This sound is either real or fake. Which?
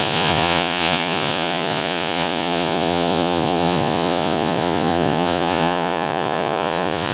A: fake